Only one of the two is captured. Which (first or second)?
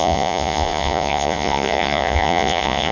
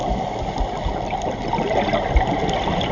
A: second